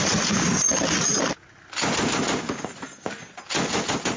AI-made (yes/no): no